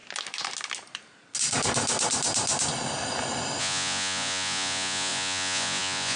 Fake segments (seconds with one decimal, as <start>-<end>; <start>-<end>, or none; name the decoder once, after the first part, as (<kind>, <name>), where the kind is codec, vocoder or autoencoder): 3.6-6.2 (vocoder, Vocos)